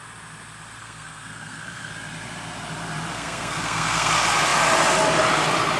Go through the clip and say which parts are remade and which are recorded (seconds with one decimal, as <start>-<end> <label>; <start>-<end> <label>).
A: 0.0-0.8 recorded; 0.8-1.9 remade; 1.9-3.1 recorded; 3.1-4.1 remade; 4.1-5.8 recorded